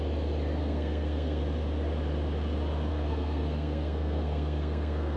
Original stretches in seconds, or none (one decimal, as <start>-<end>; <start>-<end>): 0.0-0.6; 1.4-2.9